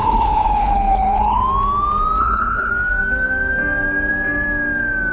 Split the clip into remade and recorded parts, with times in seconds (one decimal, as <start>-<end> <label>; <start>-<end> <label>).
0.0-1.4 remade; 1.4-2.2 recorded; 2.2-2.7 remade; 2.7-5.1 recorded